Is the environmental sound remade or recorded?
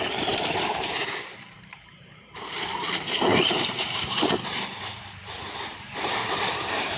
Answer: remade